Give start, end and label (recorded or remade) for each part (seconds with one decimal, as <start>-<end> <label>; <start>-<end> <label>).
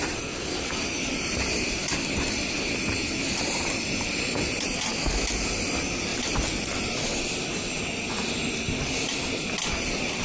0.0-6.1 recorded; 6.1-7.4 remade; 7.4-10.2 recorded